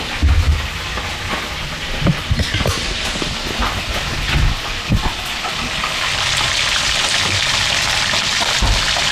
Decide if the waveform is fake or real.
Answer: real